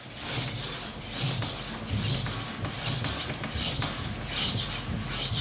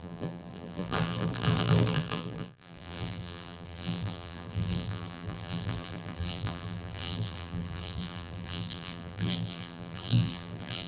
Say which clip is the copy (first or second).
second